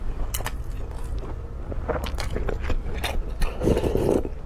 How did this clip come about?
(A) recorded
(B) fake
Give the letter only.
A